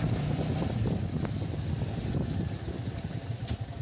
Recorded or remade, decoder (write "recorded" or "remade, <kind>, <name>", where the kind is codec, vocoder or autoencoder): recorded